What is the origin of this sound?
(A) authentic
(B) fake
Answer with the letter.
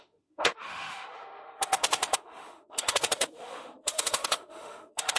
B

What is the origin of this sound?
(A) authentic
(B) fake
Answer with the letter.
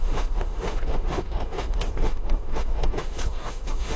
B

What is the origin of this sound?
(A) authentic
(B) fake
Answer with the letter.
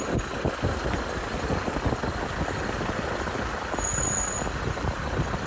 A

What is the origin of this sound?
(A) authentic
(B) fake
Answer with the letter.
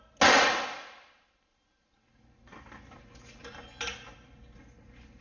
A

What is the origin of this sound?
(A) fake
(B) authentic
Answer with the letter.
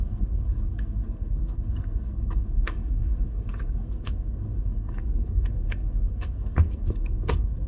A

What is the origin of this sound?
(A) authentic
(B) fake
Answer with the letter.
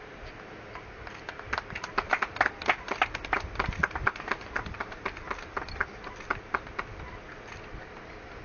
A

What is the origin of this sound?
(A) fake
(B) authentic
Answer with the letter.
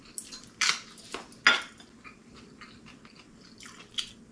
B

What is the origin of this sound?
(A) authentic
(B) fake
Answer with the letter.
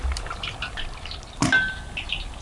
A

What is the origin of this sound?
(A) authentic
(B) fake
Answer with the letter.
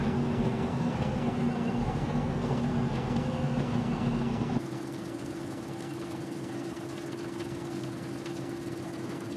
B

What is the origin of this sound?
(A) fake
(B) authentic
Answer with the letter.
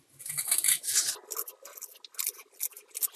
B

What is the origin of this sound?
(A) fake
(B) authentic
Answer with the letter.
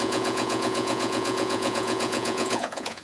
A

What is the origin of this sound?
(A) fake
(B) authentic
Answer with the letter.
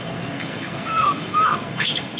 A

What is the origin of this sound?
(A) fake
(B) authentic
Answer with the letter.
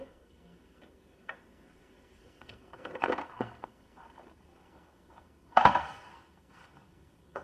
A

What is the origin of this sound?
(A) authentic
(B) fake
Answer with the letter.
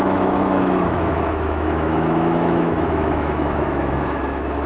B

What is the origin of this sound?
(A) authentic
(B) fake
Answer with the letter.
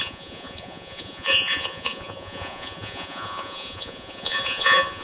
B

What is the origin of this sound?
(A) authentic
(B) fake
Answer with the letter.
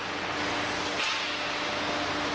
A